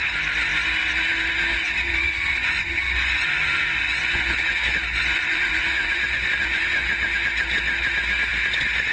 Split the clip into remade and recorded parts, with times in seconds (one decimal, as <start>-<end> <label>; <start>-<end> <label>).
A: 0.0-2.0 recorded; 2.0-6.9 remade; 6.9-8.9 recorded